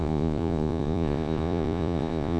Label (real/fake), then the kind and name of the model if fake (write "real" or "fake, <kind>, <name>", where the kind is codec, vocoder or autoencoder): fake, vocoder, Vocos